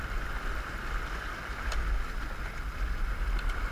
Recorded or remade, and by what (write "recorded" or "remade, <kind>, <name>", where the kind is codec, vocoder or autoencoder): recorded